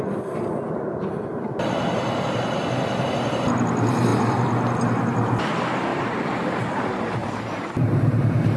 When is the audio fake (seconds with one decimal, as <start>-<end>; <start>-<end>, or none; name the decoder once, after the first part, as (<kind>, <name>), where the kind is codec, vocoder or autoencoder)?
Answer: 5.9-6.8 (vocoder, BigVGAN v2); 7.2-8.6